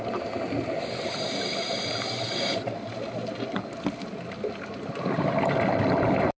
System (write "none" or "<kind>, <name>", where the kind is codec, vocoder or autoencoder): none